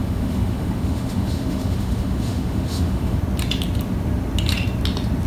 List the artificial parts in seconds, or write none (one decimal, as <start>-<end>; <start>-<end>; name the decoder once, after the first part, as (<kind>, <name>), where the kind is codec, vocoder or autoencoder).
0.0-3.2 (autoencoder, DAC-VAE)

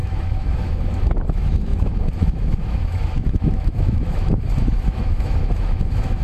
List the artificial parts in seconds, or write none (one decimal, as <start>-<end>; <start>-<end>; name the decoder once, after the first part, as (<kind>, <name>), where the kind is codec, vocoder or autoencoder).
0.0-6.2 (autoencoder, DAC-VAE)

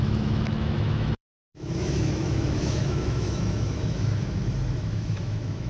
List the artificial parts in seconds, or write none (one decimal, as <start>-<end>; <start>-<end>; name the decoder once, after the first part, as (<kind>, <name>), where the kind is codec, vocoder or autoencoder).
0.0-5.7 (autoencoder, DAC-VAE)

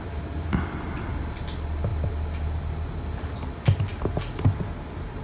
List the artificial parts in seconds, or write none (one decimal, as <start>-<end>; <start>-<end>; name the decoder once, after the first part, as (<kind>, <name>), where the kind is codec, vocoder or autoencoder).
none

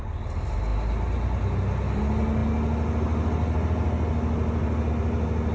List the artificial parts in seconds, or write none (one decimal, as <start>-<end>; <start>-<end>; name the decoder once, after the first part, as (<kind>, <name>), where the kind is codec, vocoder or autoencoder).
none

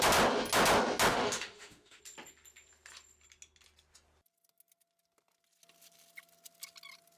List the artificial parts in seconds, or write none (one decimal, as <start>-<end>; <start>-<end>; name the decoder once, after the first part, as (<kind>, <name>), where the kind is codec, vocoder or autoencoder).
1.1-2.0 (autoencoder, DAC-VAE)